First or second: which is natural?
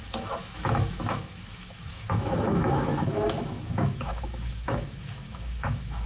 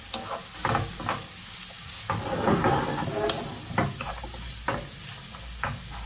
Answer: second